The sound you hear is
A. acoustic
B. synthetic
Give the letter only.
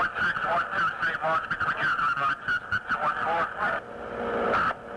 A